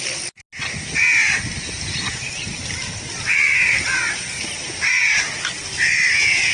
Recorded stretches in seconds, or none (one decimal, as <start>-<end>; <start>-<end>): 0.0-2.1; 2.6-4.6; 5.1-6.5